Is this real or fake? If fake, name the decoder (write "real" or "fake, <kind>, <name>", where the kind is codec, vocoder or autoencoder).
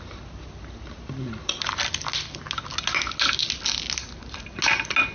real